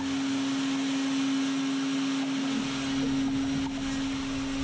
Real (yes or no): yes